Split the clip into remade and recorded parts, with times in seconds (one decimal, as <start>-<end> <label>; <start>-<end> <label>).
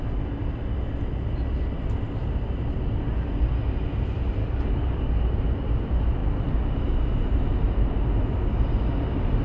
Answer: 0.0-4.4 recorded; 4.4-5.2 remade; 5.2-9.4 recorded